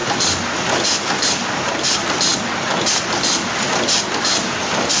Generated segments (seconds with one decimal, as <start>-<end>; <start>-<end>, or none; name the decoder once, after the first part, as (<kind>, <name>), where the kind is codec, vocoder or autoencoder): none